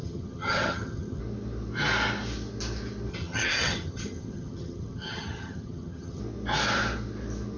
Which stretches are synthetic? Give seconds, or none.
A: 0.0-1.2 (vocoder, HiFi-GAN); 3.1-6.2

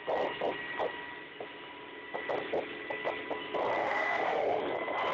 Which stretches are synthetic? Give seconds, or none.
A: 3.8-4.6 (autoencoder, DAC-VAE)

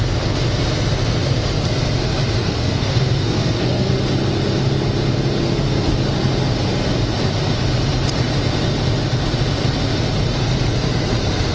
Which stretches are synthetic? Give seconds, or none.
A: 2.4-3.9 (codec, SNAC); 5.4-5.9

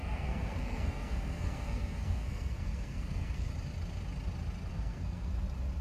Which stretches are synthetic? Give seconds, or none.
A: 0.0-3.5 (codec, SNAC); 4.7-5.3